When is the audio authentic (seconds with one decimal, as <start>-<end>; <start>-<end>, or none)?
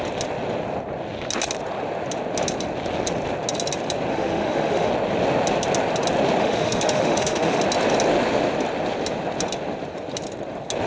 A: 0.0-4.1; 4.9-6.4; 7.6-10.9